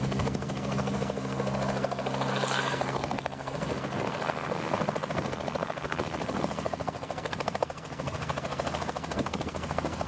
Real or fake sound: fake